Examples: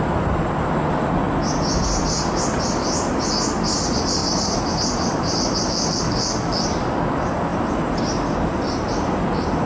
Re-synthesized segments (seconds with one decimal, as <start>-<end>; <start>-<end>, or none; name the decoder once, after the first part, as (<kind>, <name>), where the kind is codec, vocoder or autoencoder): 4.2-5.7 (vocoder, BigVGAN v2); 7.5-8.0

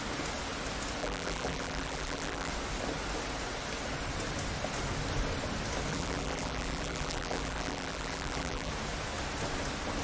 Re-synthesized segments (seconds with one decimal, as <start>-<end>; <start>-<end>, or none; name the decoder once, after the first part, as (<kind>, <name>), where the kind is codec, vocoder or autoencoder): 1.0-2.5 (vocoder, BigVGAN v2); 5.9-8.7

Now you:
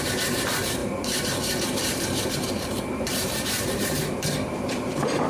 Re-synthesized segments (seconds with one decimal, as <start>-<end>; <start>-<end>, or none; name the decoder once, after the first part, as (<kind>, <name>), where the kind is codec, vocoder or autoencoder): 0.0-5.3 (vocoder, BigVGAN v2)

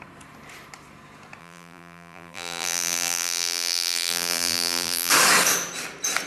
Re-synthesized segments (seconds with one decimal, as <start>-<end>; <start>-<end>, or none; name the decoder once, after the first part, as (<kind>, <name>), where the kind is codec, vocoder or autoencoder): 1.4-5.1 (vocoder, BigVGAN v2)

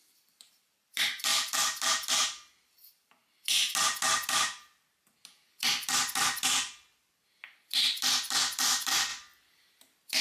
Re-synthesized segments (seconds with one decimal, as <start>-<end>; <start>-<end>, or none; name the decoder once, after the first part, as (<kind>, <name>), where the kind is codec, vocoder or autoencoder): 0.0-3.2 (vocoder, BigVGAN v2); 5.1-9.1